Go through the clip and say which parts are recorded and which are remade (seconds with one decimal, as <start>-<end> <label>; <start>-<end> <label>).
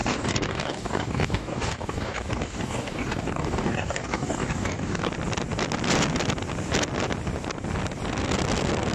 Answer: 0.0-5.1 remade; 5.1-8.9 recorded